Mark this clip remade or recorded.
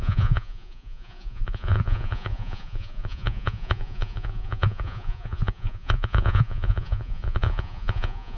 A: remade